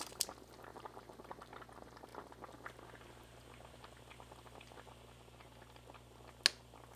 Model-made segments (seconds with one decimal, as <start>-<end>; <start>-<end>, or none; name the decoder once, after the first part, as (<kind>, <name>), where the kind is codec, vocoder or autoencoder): 0.7-1.6 (vocoder, BigVGAN v2)